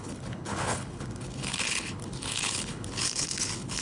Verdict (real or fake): fake